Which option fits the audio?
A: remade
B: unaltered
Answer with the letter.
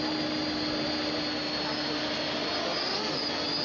B